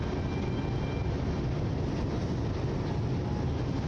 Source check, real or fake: real